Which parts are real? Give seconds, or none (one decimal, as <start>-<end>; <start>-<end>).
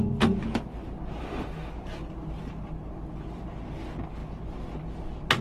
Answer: 0.0-1.2; 1.7-5.4